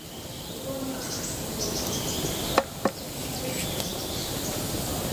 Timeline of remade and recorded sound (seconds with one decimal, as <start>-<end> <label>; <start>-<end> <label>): 0.0-5.1 recorded